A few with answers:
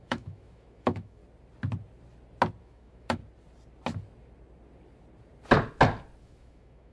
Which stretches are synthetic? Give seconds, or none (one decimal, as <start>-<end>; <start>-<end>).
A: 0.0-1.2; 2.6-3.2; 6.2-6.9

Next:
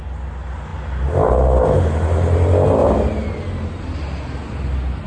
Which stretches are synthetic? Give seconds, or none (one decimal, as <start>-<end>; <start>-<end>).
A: none

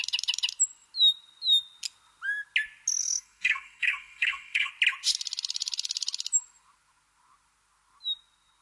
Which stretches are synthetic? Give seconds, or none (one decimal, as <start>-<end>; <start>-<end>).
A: 3.0-4.7

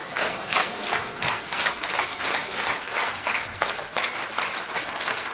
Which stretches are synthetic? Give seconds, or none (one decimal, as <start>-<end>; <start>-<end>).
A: 0.0-4.2; 4.8-5.3

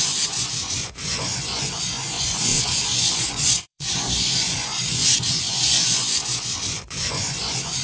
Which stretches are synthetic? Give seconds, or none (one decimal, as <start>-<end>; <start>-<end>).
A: 0.0-7.8

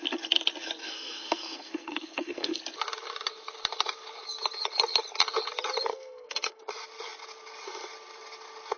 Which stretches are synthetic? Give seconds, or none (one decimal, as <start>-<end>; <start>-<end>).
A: 0.8-2.6; 5.9-6.6

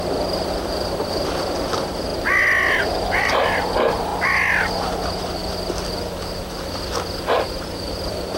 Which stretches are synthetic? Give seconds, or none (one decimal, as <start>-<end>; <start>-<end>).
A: 0.0-5.4; 7.3-8.4

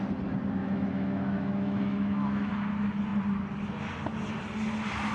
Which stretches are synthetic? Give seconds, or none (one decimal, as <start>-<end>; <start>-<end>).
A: 0.6-2.5